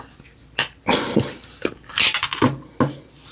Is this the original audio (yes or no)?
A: yes